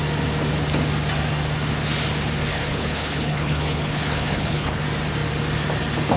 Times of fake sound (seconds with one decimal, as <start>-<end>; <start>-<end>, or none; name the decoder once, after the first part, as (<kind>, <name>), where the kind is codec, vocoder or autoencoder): 2.5-4.8 (codec, HILCodec)